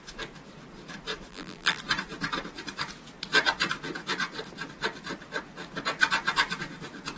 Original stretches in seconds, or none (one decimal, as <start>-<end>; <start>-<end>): 0.0-1.3; 1.8-7.2